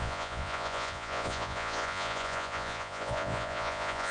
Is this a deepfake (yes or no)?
yes